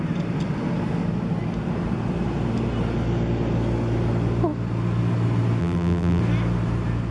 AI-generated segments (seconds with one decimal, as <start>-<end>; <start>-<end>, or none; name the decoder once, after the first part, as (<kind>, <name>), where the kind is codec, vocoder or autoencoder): 5.6-6.2 (vocoder, BigVGAN v2)